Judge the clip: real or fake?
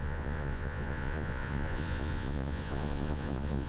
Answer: fake